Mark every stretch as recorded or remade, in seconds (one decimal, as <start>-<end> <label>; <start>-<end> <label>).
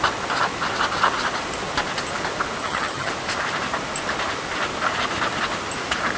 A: 0.0-2.6 recorded; 2.6-3.1 remade; 3.1-6.2 recorded